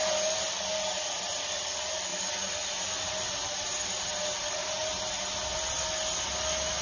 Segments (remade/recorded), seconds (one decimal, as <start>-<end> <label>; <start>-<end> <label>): 0.0-6.8 recorded